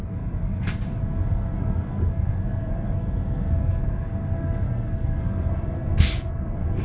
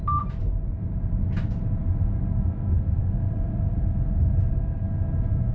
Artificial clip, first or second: first